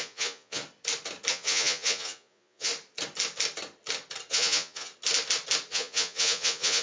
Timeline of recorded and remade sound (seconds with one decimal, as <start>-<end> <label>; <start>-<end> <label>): 0.0-0.6 remade; 0.6-1.3 recorded; 1.3-2.7 remade; 2.7-4.3 recorded; 4.3-4.9 remade; 4.9-5.7 recorded; 5.7-6.8 remade